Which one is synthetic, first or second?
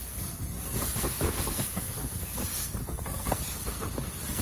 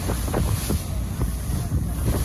first